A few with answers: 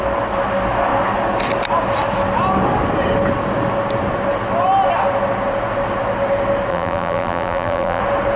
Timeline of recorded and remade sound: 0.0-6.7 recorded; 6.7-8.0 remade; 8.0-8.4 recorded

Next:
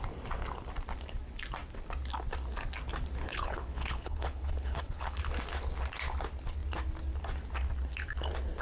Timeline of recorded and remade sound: 0.0-3.3 recorded; 3.3-5.2 remade; 5.2-8.6 recorded